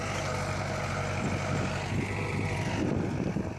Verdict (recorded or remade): recorded